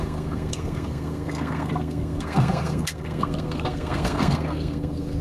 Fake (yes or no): yes